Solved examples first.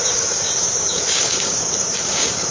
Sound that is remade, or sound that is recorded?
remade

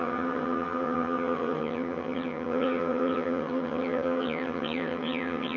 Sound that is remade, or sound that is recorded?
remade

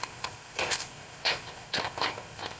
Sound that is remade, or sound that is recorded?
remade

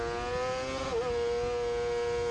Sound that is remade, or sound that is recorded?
recorded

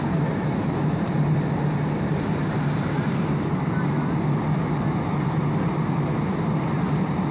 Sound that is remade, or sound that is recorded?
recorded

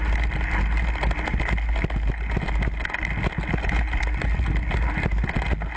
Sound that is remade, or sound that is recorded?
recorded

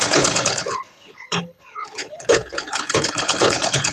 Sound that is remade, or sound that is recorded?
remade